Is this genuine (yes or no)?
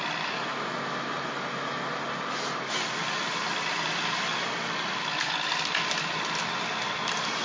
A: yes